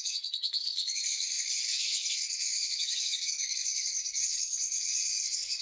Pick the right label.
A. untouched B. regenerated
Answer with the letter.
B